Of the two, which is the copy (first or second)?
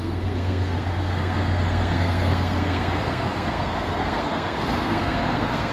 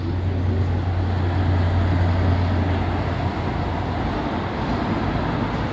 first